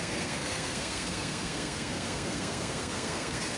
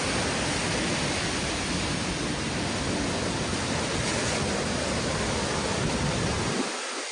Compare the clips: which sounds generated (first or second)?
first